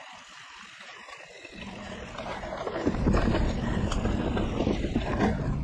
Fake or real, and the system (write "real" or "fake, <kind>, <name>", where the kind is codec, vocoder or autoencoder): real